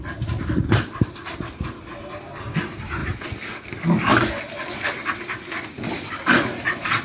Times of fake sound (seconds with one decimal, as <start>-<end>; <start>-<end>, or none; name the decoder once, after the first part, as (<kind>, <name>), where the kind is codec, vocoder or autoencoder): 0.0-1.9 (vocoder, BigVGAN v2); 2.6-3.0; 5.9-7.0